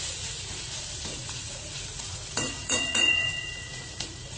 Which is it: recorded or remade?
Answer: remade